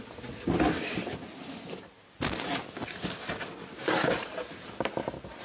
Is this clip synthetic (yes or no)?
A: no